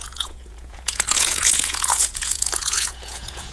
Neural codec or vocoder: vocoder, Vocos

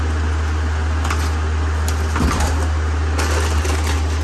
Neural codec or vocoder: none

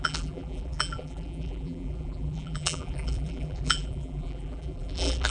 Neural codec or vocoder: vocoder, BigVGAN v2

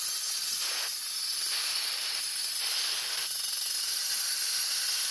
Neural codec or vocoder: none